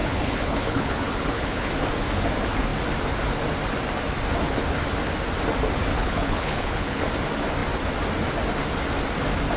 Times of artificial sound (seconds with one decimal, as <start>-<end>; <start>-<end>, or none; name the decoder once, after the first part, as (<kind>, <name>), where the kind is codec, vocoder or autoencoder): 0.0-1.7 (codec, HILCodec); 5.9-7.1